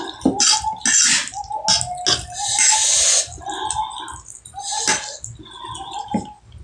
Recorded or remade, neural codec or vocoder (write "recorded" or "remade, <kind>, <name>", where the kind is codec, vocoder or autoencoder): recorded